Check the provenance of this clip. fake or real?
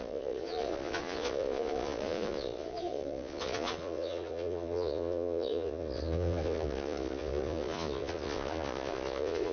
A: fake